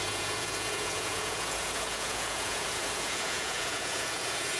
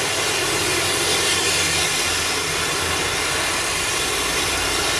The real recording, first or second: second